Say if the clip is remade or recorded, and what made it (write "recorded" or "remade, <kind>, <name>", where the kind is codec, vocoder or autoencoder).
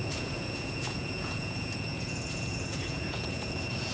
remade, vocoder, Vocos